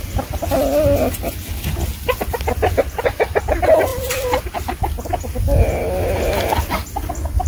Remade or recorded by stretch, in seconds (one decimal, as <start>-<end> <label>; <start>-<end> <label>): 0.0-7.5 recorded